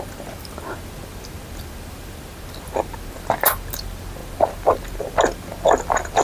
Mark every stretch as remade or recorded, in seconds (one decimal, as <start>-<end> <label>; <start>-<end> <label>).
0.0-6.2 recorded